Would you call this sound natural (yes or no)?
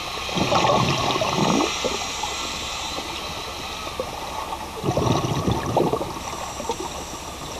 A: yes